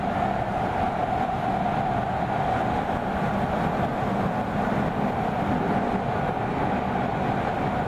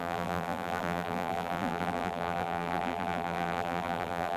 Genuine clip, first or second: first